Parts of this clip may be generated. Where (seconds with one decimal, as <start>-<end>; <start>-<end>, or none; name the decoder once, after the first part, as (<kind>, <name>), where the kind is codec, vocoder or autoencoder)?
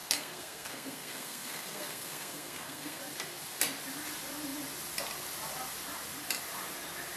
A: 0.0-3.0 (codec, SNAC)